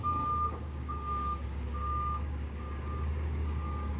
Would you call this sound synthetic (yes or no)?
yes